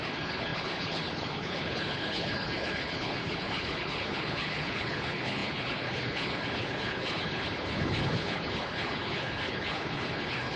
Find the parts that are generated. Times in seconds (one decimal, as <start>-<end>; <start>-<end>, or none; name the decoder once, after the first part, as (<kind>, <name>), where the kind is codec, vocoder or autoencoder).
0.0-10.6 (codec, HILCodec)